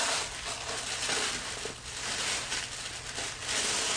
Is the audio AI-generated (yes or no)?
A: no